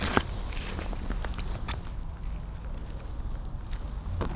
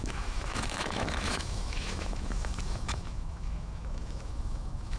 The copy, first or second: second